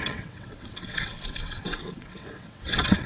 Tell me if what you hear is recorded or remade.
remade